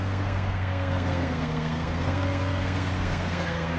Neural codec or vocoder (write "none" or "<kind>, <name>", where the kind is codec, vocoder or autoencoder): codec, SNAC